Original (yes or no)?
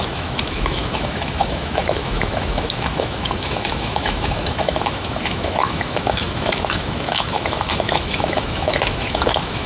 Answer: no